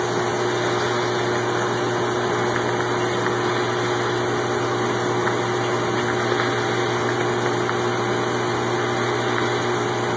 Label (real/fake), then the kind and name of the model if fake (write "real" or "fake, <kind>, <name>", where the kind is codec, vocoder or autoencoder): real